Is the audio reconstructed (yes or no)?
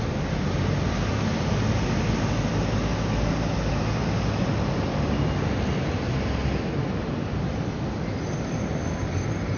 no